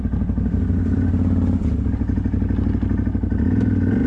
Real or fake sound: real